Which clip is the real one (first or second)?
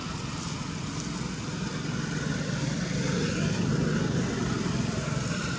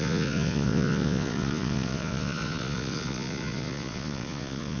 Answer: first